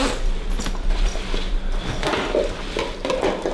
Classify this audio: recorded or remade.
recorded